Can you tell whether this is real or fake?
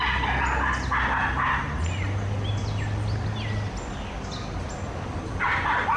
real